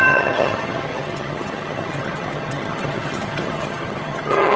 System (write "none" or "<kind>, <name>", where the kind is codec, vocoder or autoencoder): vocoder, HiFi-GAN